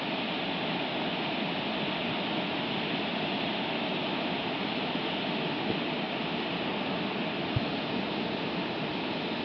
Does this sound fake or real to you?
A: real